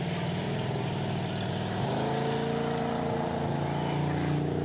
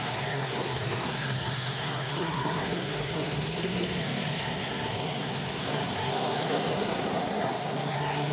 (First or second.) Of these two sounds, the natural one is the first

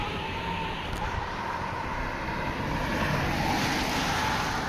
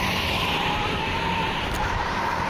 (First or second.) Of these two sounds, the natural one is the first